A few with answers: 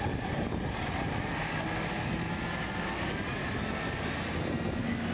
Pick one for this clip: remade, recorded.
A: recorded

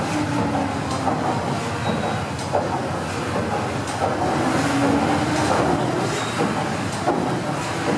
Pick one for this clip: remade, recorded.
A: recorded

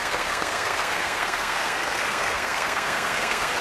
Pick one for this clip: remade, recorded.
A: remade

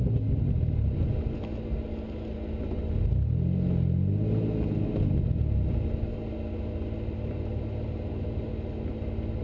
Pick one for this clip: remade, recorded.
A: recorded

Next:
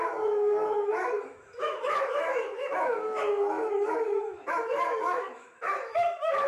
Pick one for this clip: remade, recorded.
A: remade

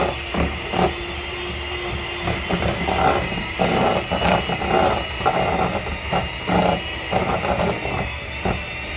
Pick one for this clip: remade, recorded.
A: recorded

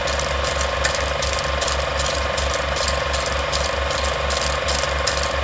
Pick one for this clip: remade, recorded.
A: recorded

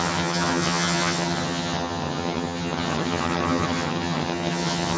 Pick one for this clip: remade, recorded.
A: remade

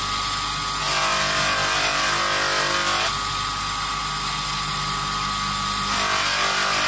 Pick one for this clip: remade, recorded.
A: recorded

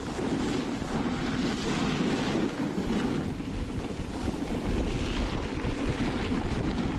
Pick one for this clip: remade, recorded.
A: recorded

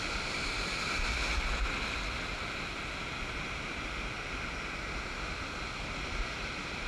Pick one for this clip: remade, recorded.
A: recorded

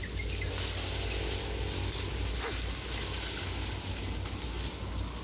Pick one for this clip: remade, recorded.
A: recorded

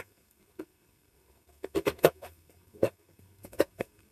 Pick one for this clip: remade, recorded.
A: remade